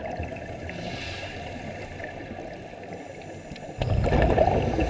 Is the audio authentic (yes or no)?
yes